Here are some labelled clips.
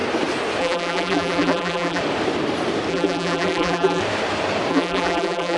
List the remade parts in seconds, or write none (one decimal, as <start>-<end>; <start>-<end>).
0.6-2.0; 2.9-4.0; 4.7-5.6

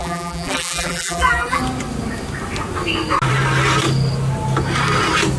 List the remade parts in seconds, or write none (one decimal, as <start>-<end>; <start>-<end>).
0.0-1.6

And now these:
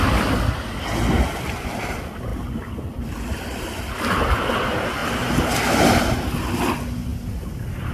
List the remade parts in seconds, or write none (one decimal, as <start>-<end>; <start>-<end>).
5.0-6.0; 7.1-7.9